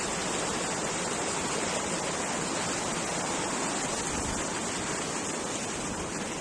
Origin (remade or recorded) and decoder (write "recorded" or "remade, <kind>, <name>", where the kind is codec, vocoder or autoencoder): recorded